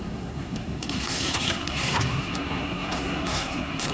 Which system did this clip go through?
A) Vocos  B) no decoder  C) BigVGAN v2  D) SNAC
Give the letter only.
D